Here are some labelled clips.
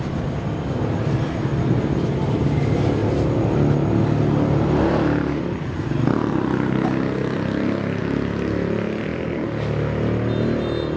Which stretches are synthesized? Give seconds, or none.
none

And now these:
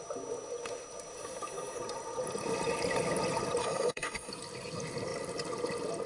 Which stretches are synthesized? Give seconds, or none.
3.6-4.3 (codec, SNAC)

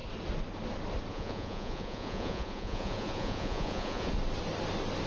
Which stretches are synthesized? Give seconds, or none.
1.1-4.1 (vocoder, Vocos)

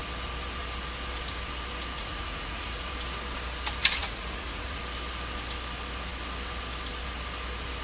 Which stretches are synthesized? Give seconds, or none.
2.0-2.9 (vocoder, Vocos); 4.0-4.8

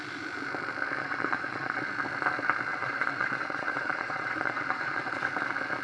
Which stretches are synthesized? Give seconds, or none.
1.0-1.8 (vocoder, Vocos); 2.7-5.2